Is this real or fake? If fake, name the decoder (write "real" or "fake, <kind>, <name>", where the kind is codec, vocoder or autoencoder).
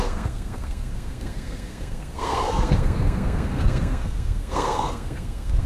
fake, codec, SNAC